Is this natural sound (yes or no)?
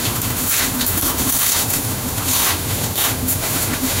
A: no